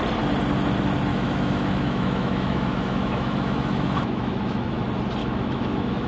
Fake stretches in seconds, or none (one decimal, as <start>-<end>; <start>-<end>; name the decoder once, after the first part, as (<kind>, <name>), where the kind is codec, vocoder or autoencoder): 1.1-4.8 (autoencoder, DAC-VAE); 5.2-6.1